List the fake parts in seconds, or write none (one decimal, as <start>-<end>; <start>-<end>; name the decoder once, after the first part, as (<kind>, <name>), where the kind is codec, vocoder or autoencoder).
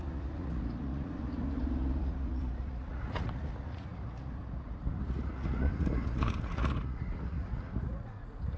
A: 0.0-8.6 (vocoder, Vocos)